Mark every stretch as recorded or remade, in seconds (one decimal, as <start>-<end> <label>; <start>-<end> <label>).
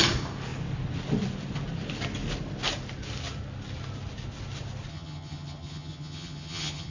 0.0-4.9 recorded; 4.9-6.9 remade